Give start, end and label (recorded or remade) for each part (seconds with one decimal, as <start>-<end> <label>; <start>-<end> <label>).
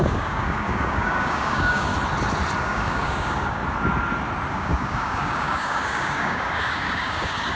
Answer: 0.0-1.9 remade; 1.9-2.6 recorded; 2.6-3.6 remade; 3.6-4.5 recorded; 4.5-7.6 remade